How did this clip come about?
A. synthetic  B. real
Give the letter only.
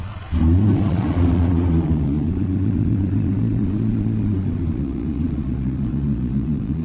A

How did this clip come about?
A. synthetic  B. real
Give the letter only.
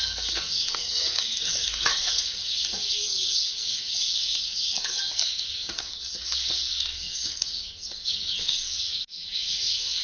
A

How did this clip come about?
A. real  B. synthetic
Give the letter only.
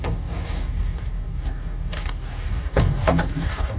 B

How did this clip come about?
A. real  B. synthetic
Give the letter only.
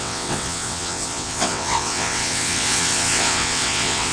B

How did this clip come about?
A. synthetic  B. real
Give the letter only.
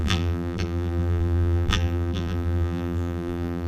A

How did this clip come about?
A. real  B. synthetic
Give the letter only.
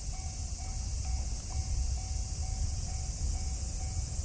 A